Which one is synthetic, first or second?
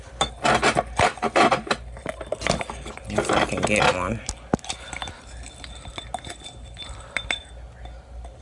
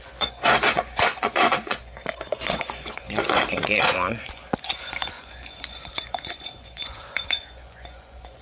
second